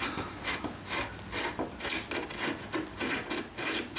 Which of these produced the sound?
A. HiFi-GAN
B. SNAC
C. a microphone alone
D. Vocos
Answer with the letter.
C